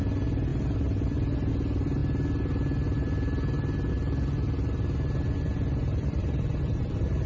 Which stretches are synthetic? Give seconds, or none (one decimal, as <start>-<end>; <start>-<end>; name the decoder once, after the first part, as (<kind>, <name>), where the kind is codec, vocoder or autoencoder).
0.5-1.5 (vocoder, BigVGAN v2); 5.8-7.3

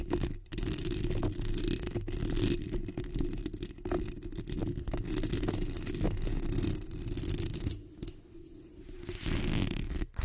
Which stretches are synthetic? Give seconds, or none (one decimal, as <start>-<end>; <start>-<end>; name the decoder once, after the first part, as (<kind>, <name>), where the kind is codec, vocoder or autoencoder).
none

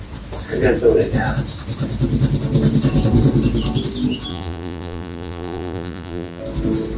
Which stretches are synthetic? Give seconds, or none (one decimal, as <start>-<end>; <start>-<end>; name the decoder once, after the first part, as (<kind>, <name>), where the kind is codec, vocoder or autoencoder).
4.3-6.4 (vocoder, BigVGAN v2)

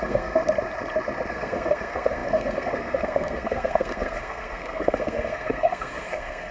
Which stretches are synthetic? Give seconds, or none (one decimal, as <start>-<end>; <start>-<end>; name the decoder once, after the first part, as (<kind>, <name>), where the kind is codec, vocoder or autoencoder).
0.0-0.4 (codec, SNAC); 1.3-6.5

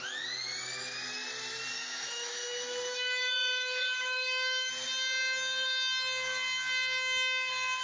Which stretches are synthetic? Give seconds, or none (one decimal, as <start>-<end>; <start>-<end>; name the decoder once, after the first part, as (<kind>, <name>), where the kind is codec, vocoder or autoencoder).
1.7-4.7 (autoencoder, DAC-VAE)

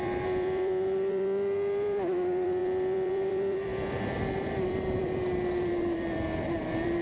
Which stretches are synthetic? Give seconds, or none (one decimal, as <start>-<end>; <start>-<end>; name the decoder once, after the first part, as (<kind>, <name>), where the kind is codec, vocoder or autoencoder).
0.0-7.0 (vocoder, BigVGAN v2)

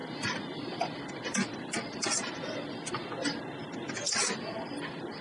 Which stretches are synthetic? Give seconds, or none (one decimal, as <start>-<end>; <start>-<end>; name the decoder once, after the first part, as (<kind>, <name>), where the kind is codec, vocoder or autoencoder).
none